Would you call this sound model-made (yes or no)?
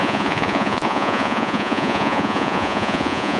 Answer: yes